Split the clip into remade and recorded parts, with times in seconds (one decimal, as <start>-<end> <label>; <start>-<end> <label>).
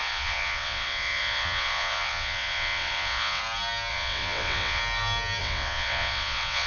0.0-3.4 remade; 3.4-3.9 recorded; 3.9-4.8 remade; 4.8-5.4 recorded; 5.4-6.7 remade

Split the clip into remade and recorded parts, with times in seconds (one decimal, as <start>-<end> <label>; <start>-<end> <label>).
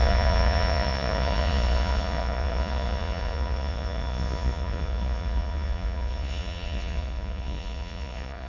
0.0-8.5 remade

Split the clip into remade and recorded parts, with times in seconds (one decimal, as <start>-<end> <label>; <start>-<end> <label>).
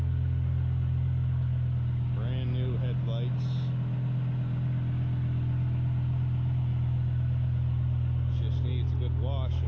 0.0-9.7 recorded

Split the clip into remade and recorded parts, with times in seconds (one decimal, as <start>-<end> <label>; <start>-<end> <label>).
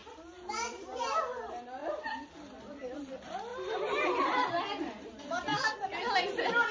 0.0-3.5 recorded; 3.5-4.5 remade; 4.5-6.7 recorded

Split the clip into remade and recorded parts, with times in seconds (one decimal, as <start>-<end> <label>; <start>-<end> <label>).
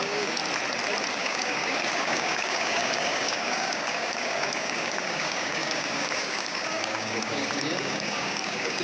0.0-0.4 remade; 0.4-1.1 recorded; 1.1-8.8 remade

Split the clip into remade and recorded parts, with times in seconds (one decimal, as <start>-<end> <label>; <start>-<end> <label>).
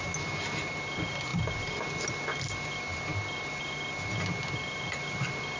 0.0-5.6 recorded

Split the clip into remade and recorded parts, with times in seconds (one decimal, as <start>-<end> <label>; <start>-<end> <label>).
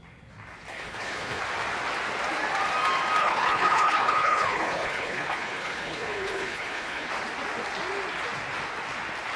0.0-0.7 recorded; 0.7-1.4 remade; 1.4-3.2 recorded; 3.2-7.1 remade; 7.1-9.4 recorded